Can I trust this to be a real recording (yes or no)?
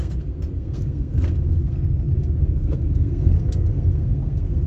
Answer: no